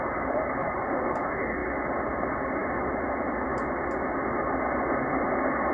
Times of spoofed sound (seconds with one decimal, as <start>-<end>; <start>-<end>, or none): 0.6-1.2